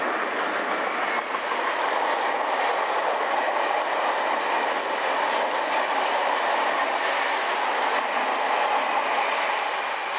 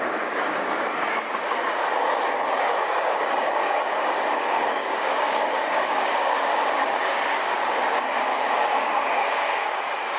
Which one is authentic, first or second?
first